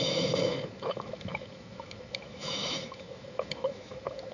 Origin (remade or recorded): remade